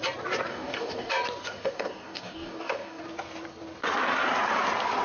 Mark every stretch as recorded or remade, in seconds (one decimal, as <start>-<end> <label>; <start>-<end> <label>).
0.0-0.5 recorded; 0.5-1.1 remade; 1.1-1.6 recorded; 1.6-3.0 remade; 3.0-5.0 recorded